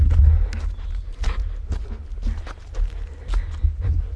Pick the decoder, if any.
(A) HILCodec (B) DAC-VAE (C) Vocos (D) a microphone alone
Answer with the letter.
D